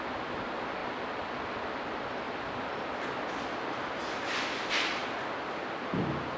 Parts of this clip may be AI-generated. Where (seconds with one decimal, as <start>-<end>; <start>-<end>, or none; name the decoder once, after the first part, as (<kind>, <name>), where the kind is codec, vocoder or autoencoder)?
none